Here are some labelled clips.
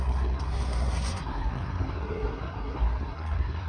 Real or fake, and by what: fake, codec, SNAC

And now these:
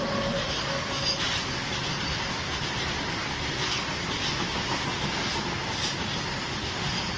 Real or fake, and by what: real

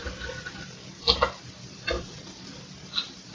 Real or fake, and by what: real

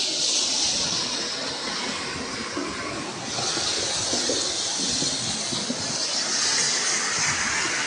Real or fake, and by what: real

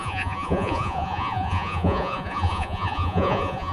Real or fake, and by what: fake, vocoder, Vocos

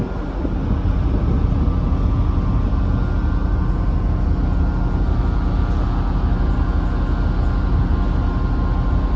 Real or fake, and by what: real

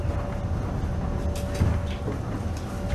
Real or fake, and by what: real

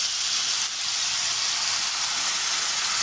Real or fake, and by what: real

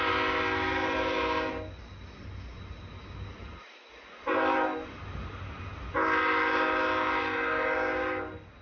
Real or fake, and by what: real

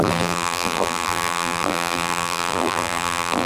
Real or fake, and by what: fake, vocoder, BigVGAN v2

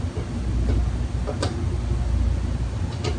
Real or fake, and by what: real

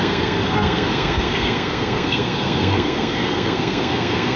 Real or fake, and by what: fake, codec, SNAC